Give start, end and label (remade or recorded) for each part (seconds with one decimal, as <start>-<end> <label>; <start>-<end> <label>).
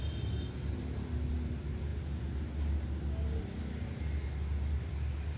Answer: 0.0-5.4 recorded